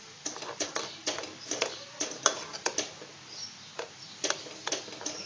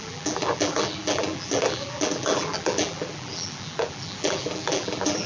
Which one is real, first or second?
first